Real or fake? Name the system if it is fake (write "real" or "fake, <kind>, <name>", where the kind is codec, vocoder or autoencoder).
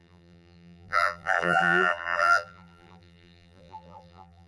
fake, vocoder, BigVGAN v2